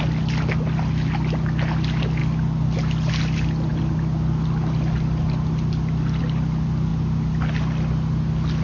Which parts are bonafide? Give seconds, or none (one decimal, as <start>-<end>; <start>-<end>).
0.0-8.6